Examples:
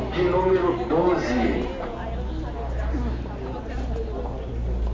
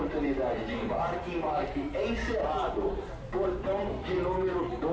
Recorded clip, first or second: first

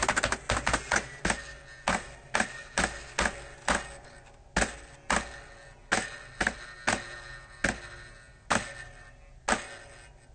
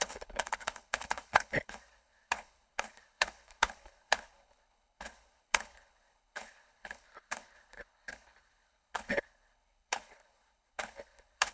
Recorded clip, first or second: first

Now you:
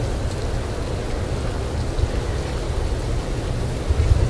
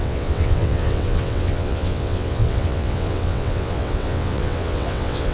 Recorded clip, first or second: first